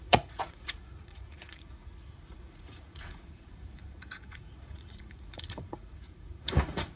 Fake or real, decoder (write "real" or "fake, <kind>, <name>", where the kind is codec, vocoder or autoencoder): fake, vocoder, Vocos